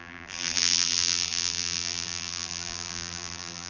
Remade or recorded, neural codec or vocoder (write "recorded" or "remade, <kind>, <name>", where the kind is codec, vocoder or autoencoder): remade, vocoder, BigVGAN v2